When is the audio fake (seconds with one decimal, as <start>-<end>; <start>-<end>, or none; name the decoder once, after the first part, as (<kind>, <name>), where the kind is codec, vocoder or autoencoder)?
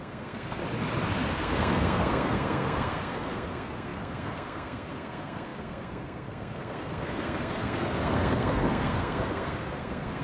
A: 0.0-0.6 (codec, SNAC); 1.3-10.2